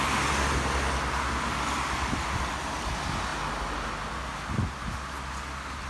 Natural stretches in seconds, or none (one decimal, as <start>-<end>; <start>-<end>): 0.0-5.9